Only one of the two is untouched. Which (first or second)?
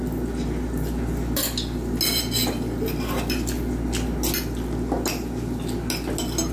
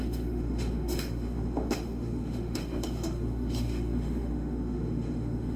first